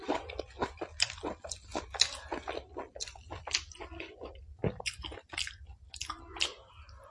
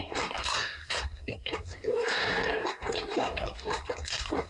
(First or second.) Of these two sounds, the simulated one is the second